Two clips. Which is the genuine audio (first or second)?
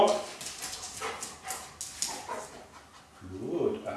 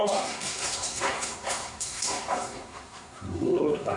first